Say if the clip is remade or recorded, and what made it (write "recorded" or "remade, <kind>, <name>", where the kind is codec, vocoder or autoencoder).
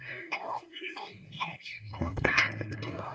remade, codec, SNAC